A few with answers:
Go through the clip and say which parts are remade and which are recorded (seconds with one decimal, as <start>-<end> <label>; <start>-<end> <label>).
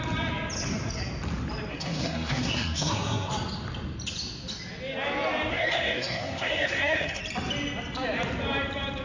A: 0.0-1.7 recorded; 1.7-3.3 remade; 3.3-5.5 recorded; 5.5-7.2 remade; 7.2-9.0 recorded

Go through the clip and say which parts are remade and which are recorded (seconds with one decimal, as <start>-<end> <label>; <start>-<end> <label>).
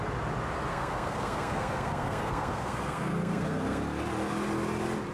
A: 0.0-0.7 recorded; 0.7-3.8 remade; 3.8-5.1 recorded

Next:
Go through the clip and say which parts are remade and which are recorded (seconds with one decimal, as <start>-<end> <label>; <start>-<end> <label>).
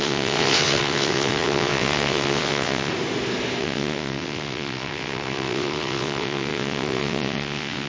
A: 0.0-2.9 remade; 2.9-3.6 recorded; 3.6-7.9 remade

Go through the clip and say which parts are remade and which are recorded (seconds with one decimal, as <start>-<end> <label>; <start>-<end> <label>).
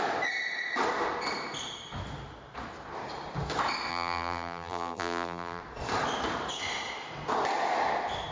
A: 0.0-3.9 recorded; 3.9-5.6 remade; 5.6-8.3 recorded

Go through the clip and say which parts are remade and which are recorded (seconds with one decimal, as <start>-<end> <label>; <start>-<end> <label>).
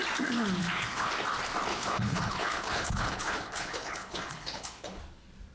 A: 0.0-0.6 recorded; 0.6-1.1 remade; 1.1-1.7 recorded; 1.7-5.0 remade; 5.0-5.5 recorded